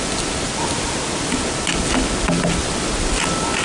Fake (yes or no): no